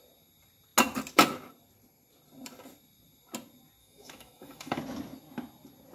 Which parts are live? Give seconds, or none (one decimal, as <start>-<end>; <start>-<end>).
0.0-3.8; 4.8-5.9